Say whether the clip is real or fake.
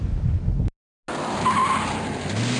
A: real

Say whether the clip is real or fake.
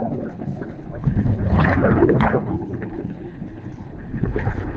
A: fake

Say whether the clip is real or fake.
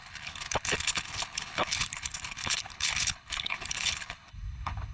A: fake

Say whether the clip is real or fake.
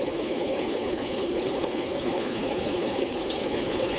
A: fake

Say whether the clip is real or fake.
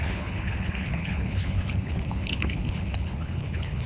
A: fake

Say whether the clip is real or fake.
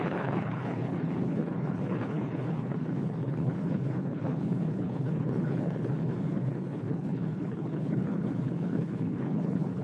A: fake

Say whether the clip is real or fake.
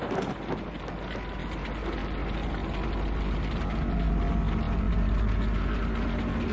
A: real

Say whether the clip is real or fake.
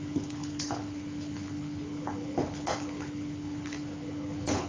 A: fake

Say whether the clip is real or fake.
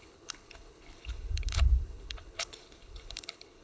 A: fake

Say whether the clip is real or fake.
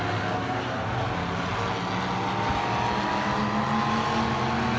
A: real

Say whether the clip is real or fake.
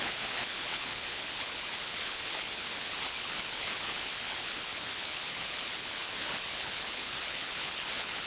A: fake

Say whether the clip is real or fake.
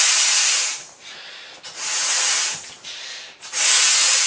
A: real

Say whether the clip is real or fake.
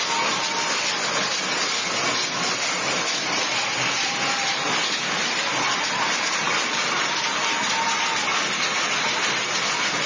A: real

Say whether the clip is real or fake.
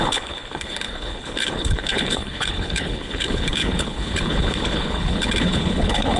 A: fake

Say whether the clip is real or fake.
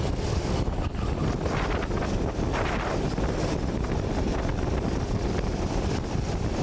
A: real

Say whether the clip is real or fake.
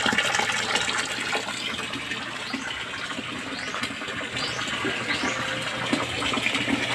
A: real